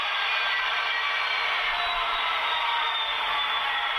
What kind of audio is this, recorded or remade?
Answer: remade